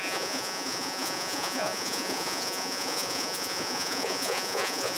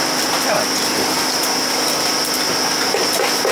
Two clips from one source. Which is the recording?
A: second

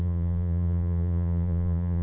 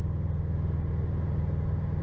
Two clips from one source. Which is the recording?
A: second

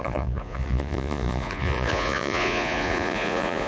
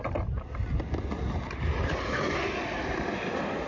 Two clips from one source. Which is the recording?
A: second